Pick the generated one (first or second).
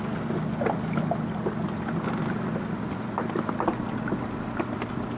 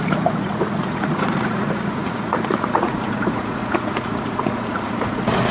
second